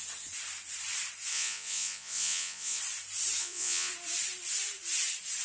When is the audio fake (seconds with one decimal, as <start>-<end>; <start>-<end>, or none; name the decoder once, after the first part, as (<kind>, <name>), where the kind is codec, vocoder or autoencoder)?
1.3-2.8 (vocoder, Vocos); 3.4-3.9